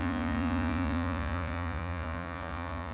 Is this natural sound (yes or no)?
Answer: no